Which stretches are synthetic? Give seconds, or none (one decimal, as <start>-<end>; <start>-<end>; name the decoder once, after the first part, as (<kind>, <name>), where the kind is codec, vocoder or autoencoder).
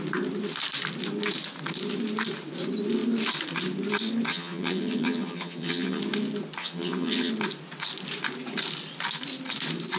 4.3-6.0 (vocoder, HiFi-GAN); 6.6-7.3